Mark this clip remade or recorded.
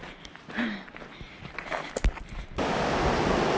recorded